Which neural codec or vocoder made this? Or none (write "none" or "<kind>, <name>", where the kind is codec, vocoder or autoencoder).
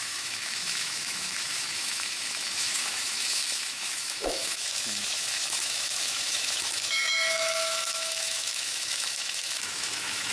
autoencoder, DAC-VAE